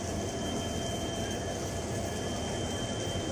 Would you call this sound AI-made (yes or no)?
no